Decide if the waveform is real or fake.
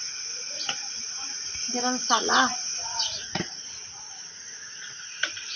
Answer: fake